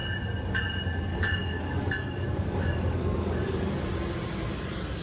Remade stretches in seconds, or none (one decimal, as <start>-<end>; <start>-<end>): 1.1-3.7